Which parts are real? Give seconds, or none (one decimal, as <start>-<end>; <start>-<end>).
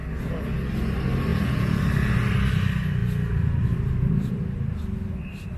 0.0-1.3; 1.8-5.6